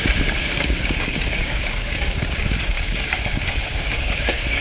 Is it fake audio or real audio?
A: fake